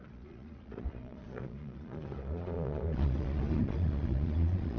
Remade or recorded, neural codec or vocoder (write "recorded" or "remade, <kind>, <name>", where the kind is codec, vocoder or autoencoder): remade, vocoder, Vocos